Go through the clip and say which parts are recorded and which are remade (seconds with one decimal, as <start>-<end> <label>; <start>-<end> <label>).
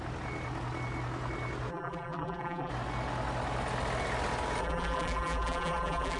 0.0-1.7 recorded; 1.7-2.7 remade; 2.7-4.6 recorded; 4.6-6.2 remade